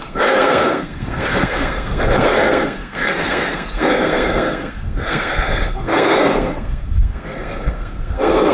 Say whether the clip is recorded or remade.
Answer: remade